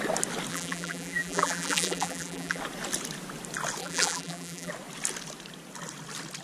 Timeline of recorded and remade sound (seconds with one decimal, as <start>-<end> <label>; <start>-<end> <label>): 0.0-0.5 recorded; 0.5-2.6 remade; 2.6-3.8 recorded; 3.8-4.7 remade; 4.7-6.4 recorded